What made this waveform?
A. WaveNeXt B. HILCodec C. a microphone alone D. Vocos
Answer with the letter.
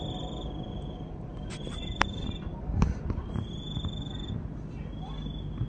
C